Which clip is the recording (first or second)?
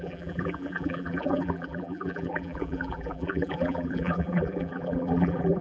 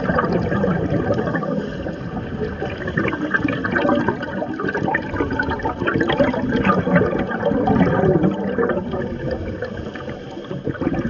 second